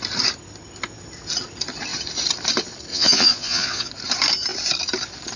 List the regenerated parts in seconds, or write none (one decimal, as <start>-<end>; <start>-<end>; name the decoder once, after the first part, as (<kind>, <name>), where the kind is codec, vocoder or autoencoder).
2.9-3.9 (vocoder, Vocos)